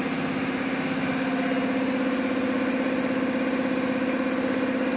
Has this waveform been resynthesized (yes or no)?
no